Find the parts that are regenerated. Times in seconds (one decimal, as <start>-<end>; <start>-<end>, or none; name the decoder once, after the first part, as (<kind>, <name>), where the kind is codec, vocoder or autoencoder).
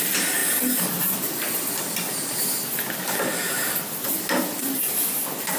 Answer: none